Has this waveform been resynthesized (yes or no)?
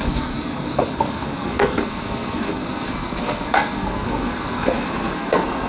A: yes